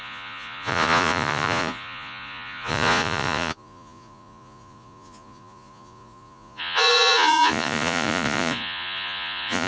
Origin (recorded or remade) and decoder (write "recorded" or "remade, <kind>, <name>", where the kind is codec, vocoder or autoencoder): remade, vocoder, Vocos